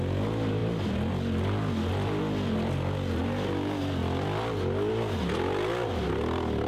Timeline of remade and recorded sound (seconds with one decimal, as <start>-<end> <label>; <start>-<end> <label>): 0.0-6.7 recorded